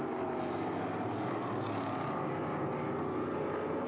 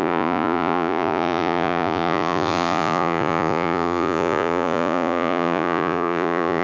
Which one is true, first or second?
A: first